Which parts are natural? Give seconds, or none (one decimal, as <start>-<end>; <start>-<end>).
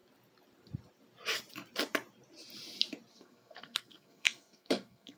0.0-3.1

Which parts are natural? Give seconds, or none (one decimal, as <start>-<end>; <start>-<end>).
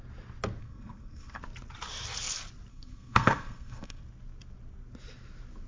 0.0-0.6; 1.4-2.7; 4.0-5.7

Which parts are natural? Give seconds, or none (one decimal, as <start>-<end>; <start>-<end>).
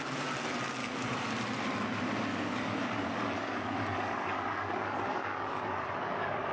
0.0-0.8; 1.3-2.3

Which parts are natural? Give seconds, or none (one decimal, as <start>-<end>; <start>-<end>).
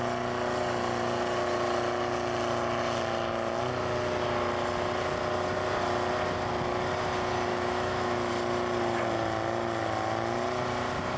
0.0-7.5; 8.3-11.2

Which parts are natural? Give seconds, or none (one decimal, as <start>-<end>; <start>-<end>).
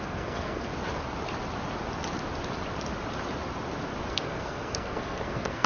0.7-4.1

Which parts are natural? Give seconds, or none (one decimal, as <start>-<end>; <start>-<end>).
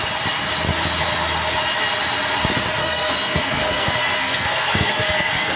0.0-2.8